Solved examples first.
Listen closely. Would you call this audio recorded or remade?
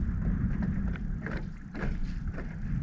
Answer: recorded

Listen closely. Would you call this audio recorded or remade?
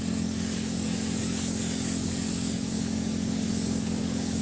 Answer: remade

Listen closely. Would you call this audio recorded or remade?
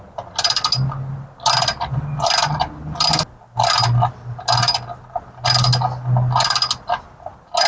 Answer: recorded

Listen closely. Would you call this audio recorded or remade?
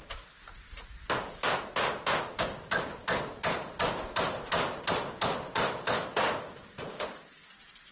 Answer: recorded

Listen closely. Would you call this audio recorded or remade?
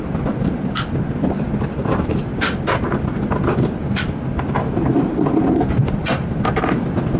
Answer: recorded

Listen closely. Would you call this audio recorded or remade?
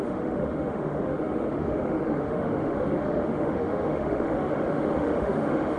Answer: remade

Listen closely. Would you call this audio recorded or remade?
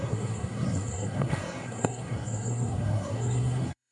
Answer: remade